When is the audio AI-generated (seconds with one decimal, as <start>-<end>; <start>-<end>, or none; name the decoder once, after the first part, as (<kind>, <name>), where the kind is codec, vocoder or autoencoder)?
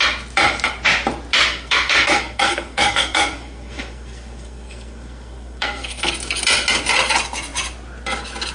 1.5-6.1 (codec, SNAC)